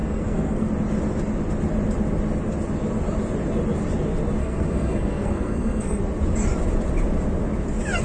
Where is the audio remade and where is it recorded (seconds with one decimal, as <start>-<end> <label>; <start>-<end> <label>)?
0.0-0.7 remade; 0.7-4.4 recorded; 4.4-6.0 remade; 6.0-8.0 recorded